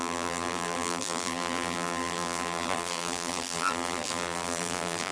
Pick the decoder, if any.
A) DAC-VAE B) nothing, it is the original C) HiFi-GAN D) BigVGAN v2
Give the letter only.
D